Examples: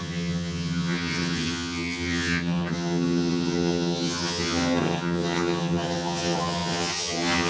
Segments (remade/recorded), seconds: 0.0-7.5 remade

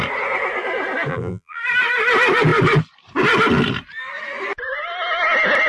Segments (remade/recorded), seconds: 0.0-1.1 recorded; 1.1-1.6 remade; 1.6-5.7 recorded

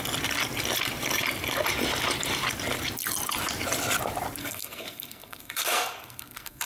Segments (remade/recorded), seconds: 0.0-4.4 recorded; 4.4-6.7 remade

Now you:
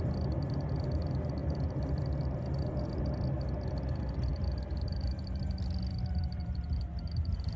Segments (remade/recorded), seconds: 0.0-7.6 recorded

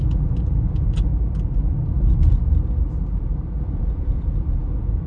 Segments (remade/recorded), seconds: 0.0-1.1 remade; 1.1-3.6 recorded; 3.6-5.1 remade

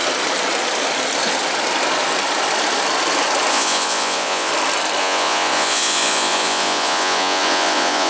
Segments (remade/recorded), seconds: 0.0-3.5 recorded; 3.5-4.5 remade; 4.5-5.0 recorded; 5.0-8.1 remade

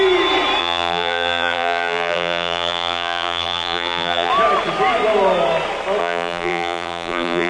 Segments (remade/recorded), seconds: 0.0-0.6 recorded; 0.6-4.3 remade; 4.3-6.0 recorded; 6.0-7.5 remade